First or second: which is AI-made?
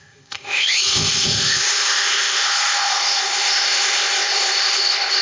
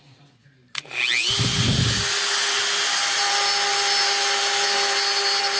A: first